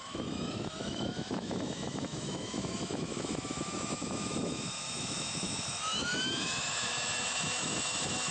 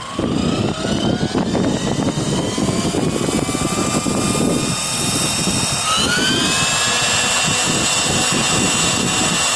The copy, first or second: first